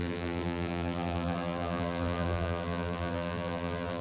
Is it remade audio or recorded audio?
remade